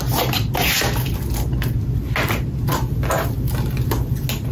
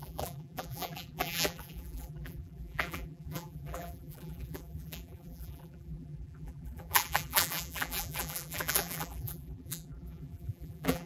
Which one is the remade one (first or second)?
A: second